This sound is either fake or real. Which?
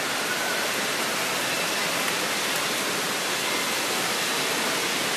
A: real